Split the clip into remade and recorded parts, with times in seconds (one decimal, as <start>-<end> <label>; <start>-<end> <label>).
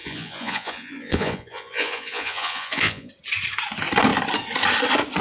0.0-3.1 remade; 3.1-5.2 recorded